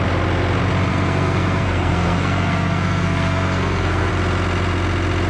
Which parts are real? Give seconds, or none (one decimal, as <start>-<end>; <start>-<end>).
0.0-0.9; 4.1-5.3